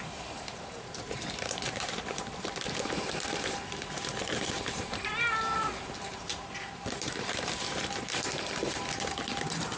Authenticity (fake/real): fake